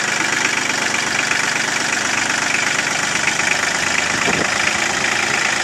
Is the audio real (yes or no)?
yes